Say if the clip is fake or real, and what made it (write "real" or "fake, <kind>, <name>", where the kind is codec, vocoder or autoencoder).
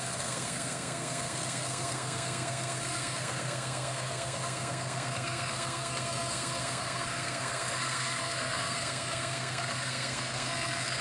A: fake, codec, SNAC